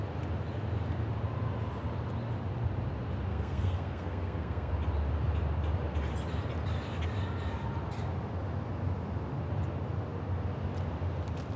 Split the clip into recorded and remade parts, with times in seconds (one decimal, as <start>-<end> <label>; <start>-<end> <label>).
0.0-3.3 recorded; 3.3-4.7 remade; 4.7-11.6 recorded